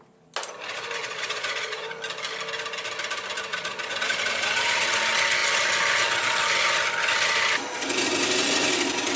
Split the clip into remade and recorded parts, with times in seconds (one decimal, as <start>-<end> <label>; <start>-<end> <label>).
0.0-1.0 recorded; 1.0-1.9 remade; 1.9-3.5 recorded; 3.5-4.9 remade; 4.9-9.2 recorded